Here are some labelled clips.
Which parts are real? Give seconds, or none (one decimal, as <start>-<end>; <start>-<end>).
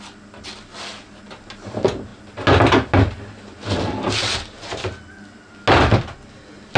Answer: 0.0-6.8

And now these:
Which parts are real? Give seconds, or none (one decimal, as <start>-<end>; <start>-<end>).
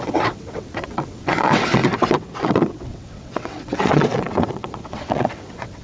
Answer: none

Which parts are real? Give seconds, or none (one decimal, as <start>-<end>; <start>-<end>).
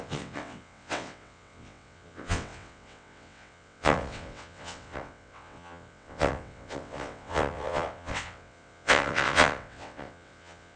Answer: none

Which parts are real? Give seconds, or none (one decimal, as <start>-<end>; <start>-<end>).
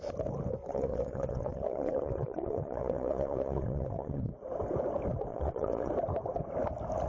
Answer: 0.0-0.6; 4.3-5.3; 5.9-7.1